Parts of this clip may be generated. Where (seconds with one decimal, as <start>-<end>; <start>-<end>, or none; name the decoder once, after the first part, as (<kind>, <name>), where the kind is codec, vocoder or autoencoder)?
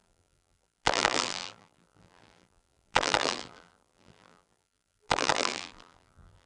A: 0.0-6.5 (vocoder, BigVGAN v2)